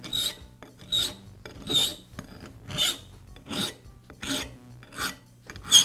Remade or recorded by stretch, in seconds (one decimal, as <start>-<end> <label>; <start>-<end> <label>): 0.0-5.8 recorded